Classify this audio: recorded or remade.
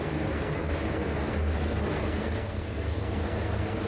remade